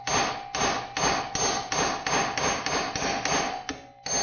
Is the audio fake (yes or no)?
no